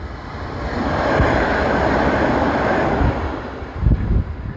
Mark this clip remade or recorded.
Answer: recorded